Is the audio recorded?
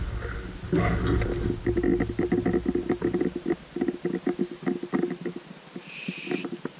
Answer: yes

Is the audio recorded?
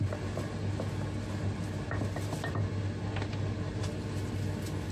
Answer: yes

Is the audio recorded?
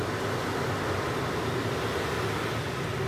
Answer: yes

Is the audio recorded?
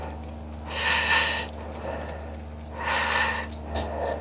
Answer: yes